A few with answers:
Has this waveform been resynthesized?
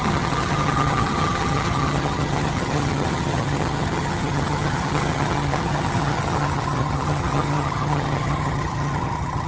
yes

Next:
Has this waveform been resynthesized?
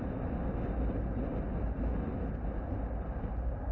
no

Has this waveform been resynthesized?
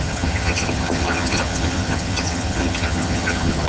yes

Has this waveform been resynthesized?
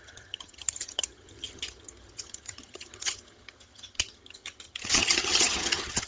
yes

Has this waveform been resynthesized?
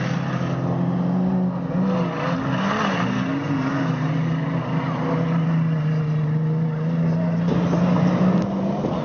no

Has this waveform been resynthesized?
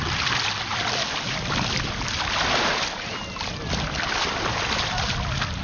no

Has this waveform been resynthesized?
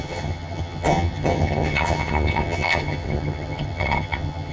yes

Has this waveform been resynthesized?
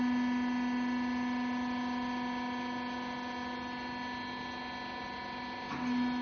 no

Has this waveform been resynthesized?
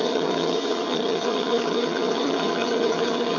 yes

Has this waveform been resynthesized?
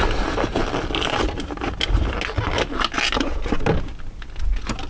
no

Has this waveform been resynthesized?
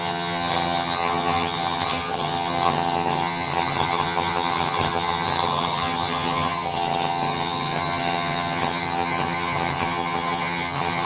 yes